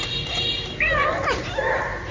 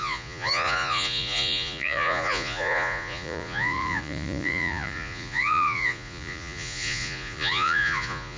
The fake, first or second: second